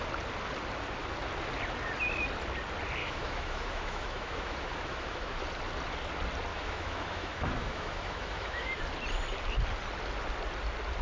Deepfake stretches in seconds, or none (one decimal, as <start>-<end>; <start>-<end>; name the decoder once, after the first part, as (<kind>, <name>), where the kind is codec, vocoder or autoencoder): 3.0-5.4 (autoencoder, DAC-VAE); 6.5-8.8